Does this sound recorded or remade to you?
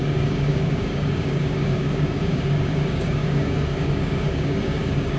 remade